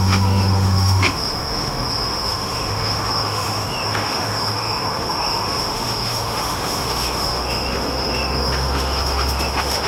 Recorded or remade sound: remade